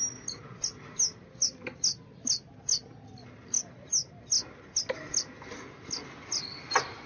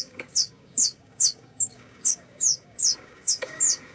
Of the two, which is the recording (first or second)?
first